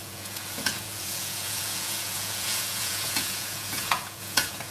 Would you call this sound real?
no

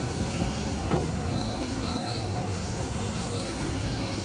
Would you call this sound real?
no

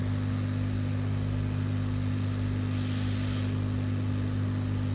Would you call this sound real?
yes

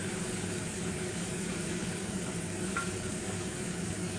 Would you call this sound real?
no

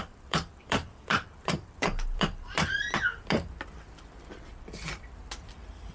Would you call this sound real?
no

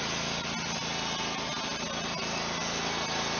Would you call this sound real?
yes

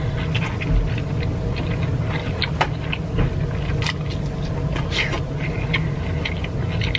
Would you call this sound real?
yes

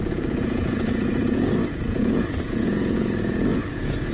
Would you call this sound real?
no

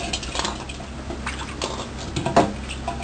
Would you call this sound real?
yes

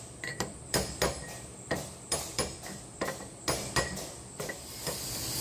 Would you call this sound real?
no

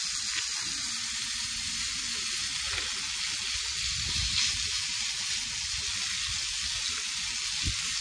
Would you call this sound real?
yes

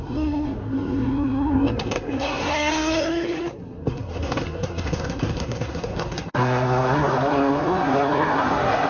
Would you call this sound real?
no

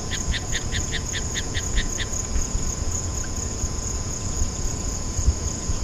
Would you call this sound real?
no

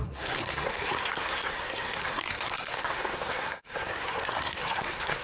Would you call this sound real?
no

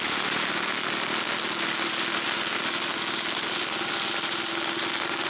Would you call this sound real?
yes